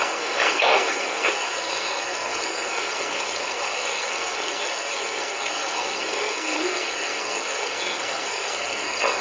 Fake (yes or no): yes